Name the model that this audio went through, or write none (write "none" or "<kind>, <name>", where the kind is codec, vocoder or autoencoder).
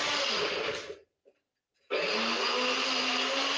none